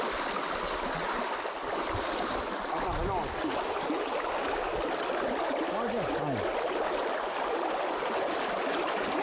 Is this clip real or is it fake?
real